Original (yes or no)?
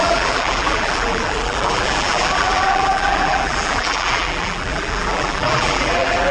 no